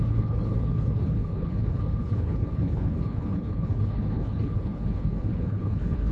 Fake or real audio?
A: fake